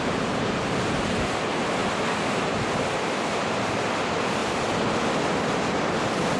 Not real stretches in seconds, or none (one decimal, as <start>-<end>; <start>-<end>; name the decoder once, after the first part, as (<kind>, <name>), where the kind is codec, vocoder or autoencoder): 1.8-3.9 (vocoder, BigVGAN v2); 4.4-4.9